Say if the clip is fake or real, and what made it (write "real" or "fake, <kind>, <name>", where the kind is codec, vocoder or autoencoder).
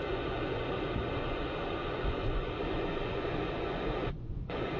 fake, vocoder, Vocos